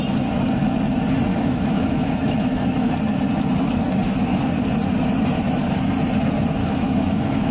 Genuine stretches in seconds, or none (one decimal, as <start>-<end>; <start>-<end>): 0.0-1.3; 2.9-6.6